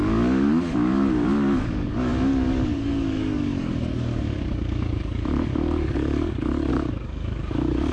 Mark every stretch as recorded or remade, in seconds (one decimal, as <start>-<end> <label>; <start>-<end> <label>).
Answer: 0.0-7.9 remade